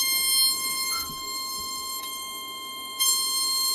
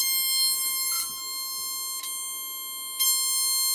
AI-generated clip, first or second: first